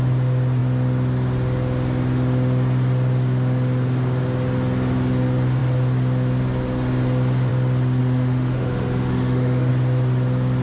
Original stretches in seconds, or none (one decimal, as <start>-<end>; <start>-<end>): 0.0-8.0; 9.7-10.6